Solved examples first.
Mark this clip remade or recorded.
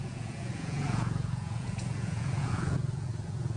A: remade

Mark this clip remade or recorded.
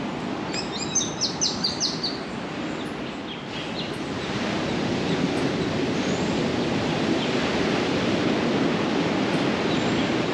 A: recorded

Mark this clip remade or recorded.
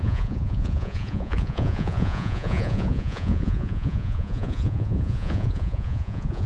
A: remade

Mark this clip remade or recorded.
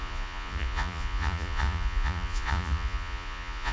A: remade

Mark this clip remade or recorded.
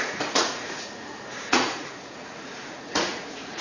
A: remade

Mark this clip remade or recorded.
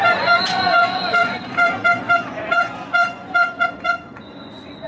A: remade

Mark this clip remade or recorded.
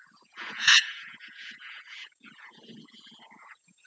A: remade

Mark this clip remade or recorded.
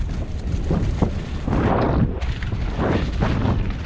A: recorded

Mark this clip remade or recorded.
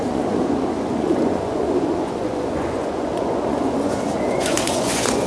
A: remade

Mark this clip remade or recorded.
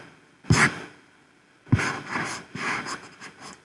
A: recorded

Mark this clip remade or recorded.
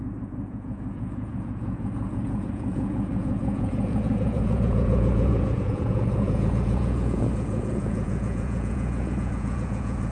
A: remade